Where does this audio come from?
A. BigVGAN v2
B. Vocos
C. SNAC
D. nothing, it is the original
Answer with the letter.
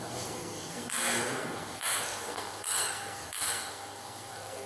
C